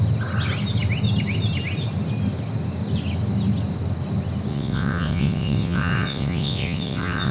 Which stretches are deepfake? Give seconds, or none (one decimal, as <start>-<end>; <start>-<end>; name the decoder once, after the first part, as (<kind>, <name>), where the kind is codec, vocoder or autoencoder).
4.5-7.3 (vocoder, WaveNeXt)